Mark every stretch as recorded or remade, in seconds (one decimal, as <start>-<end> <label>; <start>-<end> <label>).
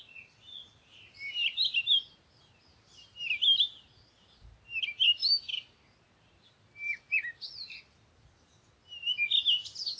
0.0-2.7 recorded; 2.7-3.4 remade; 3.4-10.0 recorded